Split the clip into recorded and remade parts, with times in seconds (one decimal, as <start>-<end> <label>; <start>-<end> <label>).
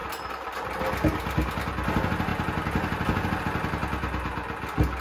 0.0-5.0 recorded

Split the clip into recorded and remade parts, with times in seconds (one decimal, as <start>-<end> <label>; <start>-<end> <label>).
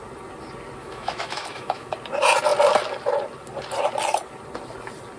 0.0-0.8 recorded; 0.8-1.9 remade; 1.9-5.2 recorded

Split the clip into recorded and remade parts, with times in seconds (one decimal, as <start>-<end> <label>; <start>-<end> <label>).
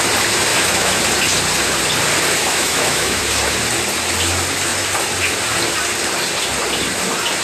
0.0-0.5 recorded; 0.5-1.0 remade; 1.0-2.4 recorded; 2.4-3.2 remade; 3.2-7.4 recorded